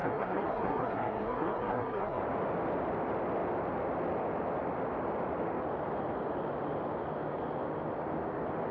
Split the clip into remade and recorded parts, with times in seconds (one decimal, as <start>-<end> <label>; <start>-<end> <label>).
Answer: 0.0-2.2 remade; 2.2-8.7 recorded